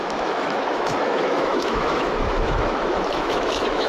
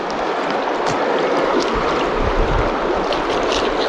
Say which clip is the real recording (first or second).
second